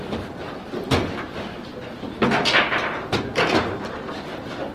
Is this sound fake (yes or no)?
no